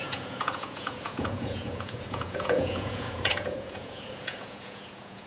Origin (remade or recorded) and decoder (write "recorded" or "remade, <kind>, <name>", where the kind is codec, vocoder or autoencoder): remade, vocoder, Vocos